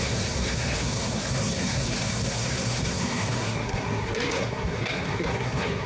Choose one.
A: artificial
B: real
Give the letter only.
A